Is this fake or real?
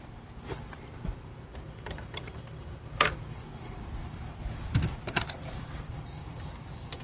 fake